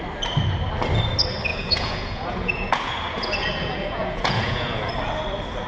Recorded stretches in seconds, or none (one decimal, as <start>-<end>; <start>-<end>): 0.0-1.5; 4.9-5.7